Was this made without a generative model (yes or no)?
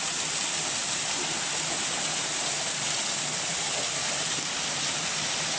yes